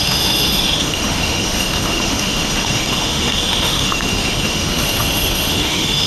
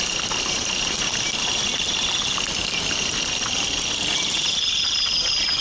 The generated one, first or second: first